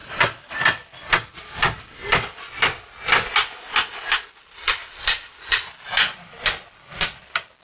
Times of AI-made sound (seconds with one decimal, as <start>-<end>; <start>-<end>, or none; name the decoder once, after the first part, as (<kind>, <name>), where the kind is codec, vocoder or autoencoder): none